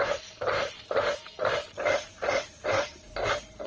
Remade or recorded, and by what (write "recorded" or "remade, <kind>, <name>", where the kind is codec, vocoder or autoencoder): remade, vocoder, BigVGAN v2